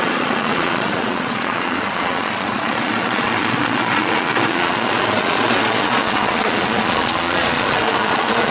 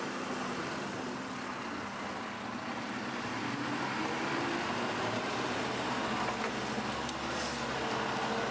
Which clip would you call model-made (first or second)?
first